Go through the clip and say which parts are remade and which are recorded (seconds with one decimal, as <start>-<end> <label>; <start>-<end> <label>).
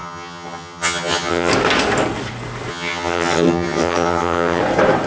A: 0.0-1.5 remade; 1.5-2.7 recorded; 2.7-4.6 remade; 4.6-5.1 recorded